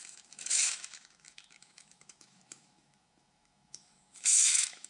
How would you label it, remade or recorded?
remade